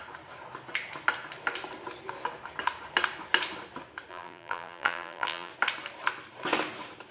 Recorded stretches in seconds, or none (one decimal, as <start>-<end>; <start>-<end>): 0.0-4.1; 5.5-7.1